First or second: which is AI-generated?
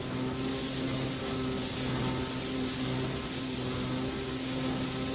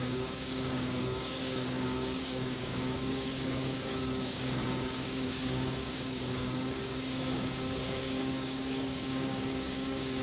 second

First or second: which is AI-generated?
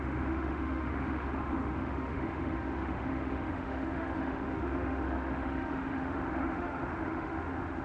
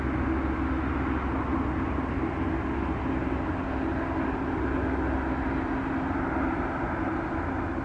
first